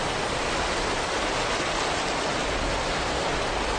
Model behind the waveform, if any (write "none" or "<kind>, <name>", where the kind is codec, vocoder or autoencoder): none